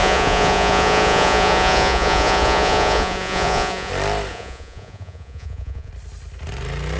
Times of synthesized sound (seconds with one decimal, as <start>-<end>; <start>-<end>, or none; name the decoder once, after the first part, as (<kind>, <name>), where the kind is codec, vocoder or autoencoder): 0.0-3.9 (vocoder, Vocos); 4.3-5.9